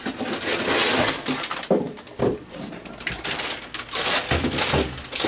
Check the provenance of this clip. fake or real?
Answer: real